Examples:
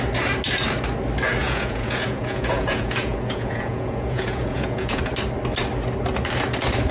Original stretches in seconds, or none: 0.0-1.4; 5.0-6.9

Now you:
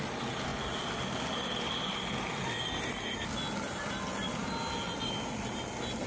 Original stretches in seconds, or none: 0.0-6.1